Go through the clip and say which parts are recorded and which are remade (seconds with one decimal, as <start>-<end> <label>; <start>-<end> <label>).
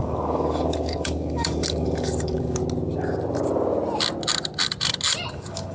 0.0-2.6 remade; 2.6-5.3 recorded; 5.3-5.7 remade